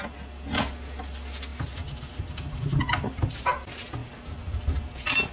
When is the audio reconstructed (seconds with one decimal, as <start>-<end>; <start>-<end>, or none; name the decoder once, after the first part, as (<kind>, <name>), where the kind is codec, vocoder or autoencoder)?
none